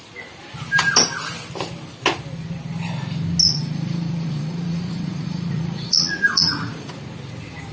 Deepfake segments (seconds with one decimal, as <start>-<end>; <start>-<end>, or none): 3.4-6.9